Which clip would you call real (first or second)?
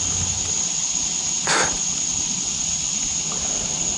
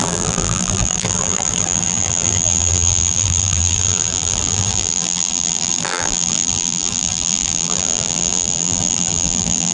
first